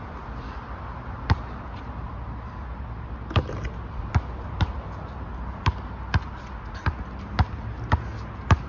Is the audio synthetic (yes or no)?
no